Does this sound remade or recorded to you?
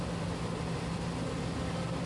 recorded